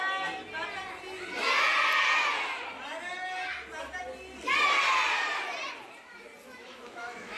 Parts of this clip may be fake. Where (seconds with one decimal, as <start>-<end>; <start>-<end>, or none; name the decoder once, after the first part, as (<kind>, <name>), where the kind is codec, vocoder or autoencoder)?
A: 6.6-7.4 (autoencoder, DAC-VAE)